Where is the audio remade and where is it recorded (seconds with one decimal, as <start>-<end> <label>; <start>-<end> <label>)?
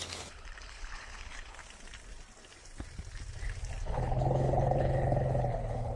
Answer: 0.0-1.6 remade; 1.6-3.8 recorded; 3.8-6.0 remade